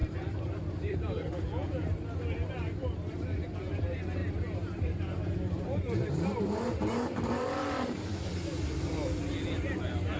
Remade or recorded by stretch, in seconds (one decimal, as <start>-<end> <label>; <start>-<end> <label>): 0.0-1.3 remade; 1.3-4.2 recorded; 4.2-8.3 remade; 8.3-10.2 recorded

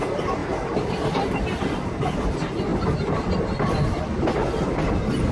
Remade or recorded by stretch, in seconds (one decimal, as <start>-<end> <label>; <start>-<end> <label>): 0.0-0.4 recorded; 0.4-1.4 remade; 1.4-5.3 recorded

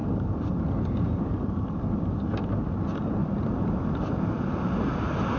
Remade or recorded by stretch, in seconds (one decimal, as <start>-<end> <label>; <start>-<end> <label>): 0.0-2.6 remade; 2.6-3.2 recorded; 3.2-3.7 remade; 3.7-5.4 recorded

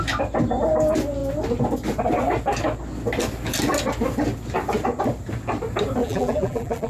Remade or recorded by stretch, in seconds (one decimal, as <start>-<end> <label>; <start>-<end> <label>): 0.0-6.0 recorded; 6.0-6.9 remade

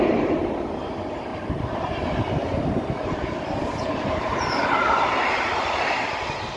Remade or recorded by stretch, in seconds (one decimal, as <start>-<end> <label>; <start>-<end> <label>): 0.0-1.3 recorded; 1.3-5.3 remade; 5.3-6.6 recorded

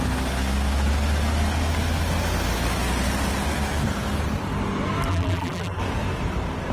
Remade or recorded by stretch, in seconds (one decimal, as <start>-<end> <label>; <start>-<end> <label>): 0.0-5.1 recorded; 5.1-5.8 remade; 5.8-6.7 recorded